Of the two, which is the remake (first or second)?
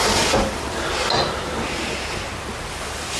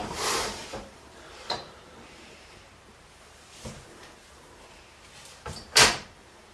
second